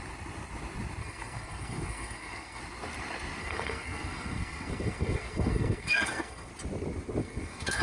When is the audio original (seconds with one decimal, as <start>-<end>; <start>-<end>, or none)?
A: 0.0-1.0; 2.6-3.4; 6.5-7.2